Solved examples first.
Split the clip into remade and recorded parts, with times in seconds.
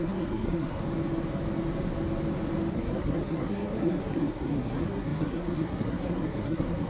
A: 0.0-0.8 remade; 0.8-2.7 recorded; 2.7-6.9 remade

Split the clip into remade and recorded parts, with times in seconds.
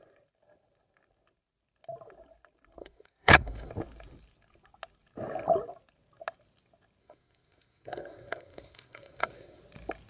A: 0.0-2.8 recorded; 2.8-3.7 remade; 3.7-7.0 recorded; 7.0-9.6 remade; 9.6-10.1 recorded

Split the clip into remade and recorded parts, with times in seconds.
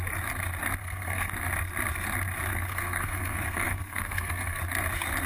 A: 0.0-0.8 recorded; 0.8-1.3 remade; 1.3-2.5 recorded; 2.5-4.6 remade; 4.6-5.3 recorded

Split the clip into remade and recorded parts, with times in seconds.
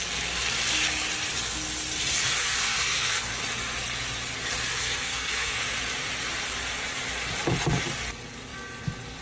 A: 0.0-2.4 recorded; 2.4-3.3 remade; 3.3-4.7 recorded; 4.7-5.6 remade; 5.6-9.2 recorded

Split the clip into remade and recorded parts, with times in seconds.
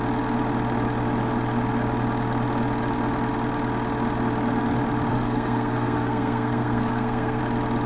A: 0.0-5.1 recorded; 5.1-7.4 remade; 7.4-7.9 recorded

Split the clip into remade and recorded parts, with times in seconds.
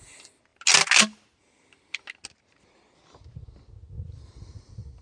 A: 0.0-5.0 recorded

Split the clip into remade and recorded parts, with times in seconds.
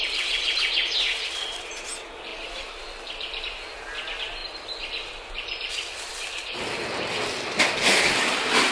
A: 0.0-8.7 recorded